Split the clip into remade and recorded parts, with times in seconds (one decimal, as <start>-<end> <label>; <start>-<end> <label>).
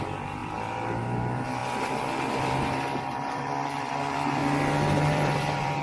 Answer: 0.0-1.6 remade; 1.6-3.0 recorded; 3.0-4.4 remade; 4.4-5.0 recorded; 5.0-5.8 remade